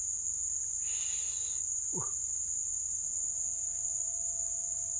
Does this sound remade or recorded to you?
remade